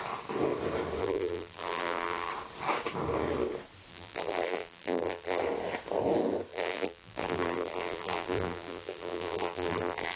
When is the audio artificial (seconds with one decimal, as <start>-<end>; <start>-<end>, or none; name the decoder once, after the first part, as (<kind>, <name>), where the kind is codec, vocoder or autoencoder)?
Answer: 1.0-2.3 (vocoder, BigVGAN v2); 3.9-5.4; 6.5-10.2